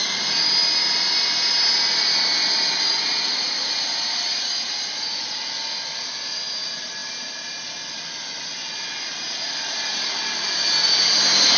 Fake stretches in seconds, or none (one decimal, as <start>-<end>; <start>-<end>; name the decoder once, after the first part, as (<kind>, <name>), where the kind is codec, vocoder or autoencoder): none